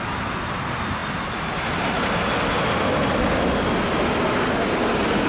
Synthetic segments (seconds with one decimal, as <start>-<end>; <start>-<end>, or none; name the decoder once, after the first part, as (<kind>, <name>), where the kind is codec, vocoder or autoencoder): none